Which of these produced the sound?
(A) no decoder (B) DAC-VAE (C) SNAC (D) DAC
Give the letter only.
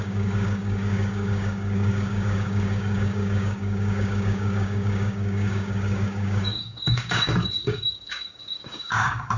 D